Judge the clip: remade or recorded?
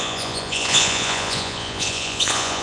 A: remade